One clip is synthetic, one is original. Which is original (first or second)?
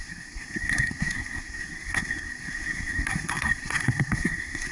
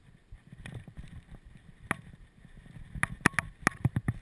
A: second